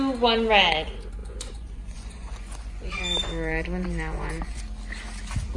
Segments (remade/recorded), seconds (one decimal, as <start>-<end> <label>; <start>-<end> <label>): 0.0-1.2 recorded; 1.2-4.6 remade; 4.6-5.6 recorded